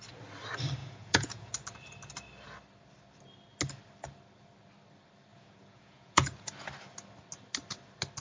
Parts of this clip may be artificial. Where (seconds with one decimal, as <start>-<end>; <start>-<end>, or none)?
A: 0.8-1.5; 5.3-6.5